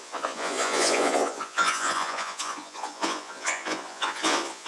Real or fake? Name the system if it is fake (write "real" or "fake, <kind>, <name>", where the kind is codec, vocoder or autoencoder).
fake, vocoder, Vocos